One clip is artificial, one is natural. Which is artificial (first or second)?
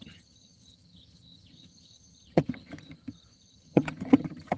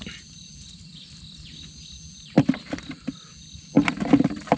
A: first